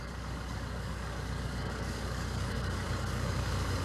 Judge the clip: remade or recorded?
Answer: remade